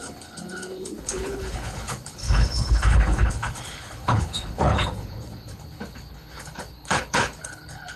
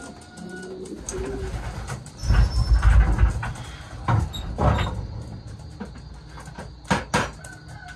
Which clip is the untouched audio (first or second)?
second